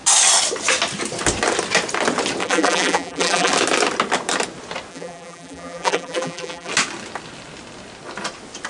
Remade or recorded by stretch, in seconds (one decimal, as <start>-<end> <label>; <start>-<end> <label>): 0.0-2.4 recorded; 2.4-3.5 remade; 3.5-4.9 recorded; 4.9-6.7 remade; 6.7-8.7 recorded